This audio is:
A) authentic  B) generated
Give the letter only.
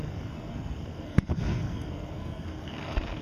B